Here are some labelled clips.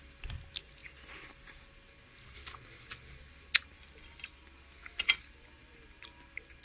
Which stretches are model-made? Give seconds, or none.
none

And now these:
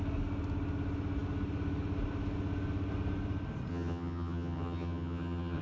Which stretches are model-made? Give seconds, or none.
3.7-5.6

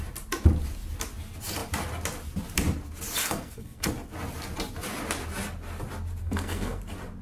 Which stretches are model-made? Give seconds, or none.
3.2-3.9; 6.2-6.8

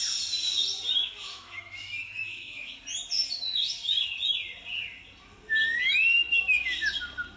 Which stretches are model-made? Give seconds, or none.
1.0-2.8